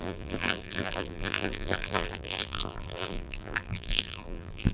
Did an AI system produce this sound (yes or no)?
yes